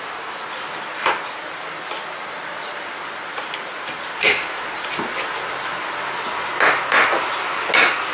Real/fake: real